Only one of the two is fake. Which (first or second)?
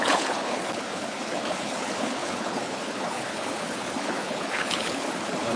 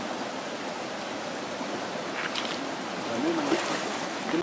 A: first